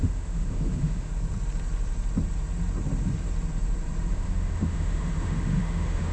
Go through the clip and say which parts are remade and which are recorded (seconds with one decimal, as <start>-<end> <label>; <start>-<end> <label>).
0.0-1.1 remade; 1.1-4.1 recorded; 4.1-6.1 remade